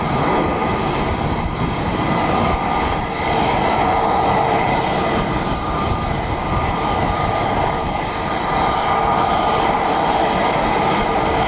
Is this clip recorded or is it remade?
remade